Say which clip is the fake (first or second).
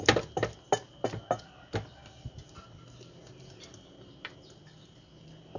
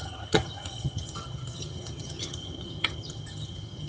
second